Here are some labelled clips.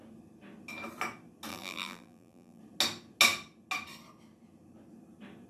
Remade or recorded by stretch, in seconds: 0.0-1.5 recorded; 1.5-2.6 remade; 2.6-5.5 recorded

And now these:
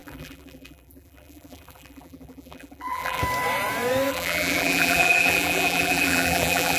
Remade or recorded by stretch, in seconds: 0.0-3.2 remade; 3.2-4.1 recorded; 4.1-6.8 remade

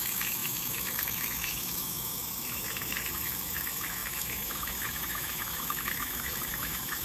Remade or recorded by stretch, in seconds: 0.0-7.0 remade

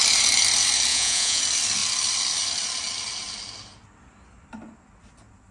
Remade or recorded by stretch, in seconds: 0.0-0.9 recorded; 0.9-1.4 remade; 1.4-5.5 recorded

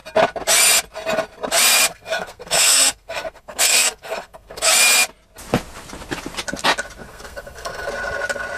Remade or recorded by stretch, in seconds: 0.0-1.9 recorded; 1.9-4.7 remade; 4.7-7.1 recorded; 7.1-7.9 remade; 7.9-8.6 recorded

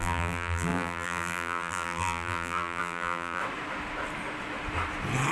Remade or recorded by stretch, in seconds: 0.0-3.4 remade; 3.4-5.3 recorded

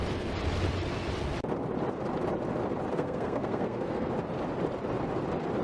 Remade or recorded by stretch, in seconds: 0.0-2.9 recorded; 2.9-4.1 remade; 4.1-5.6 recorded